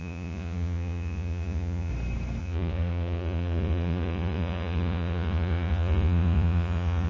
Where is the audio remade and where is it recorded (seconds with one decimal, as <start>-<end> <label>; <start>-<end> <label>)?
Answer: 0.0-1.9 remade; 1.9-2.4 recorded; 2.4-7.1 remade